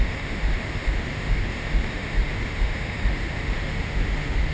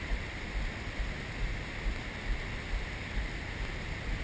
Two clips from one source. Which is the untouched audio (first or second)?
second